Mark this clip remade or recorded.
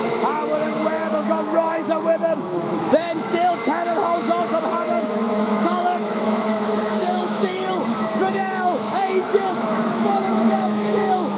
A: remade